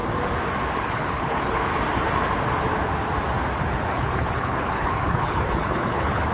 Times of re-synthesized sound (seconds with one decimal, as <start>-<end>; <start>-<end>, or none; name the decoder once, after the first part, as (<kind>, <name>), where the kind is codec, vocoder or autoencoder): 0.8-1.7 (codec, HILCodec); 3.6-6.3